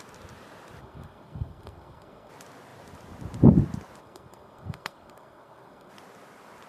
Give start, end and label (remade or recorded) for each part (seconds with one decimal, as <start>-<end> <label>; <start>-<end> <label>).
0.0-0.8 recorded; 0.8-2.3 remade; 2.3-4.0 recorded; 4.0-5.9 remade; 5.9-6.7 recorded